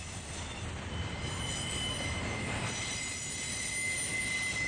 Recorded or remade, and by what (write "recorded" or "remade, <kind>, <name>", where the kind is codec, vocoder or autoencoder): recorded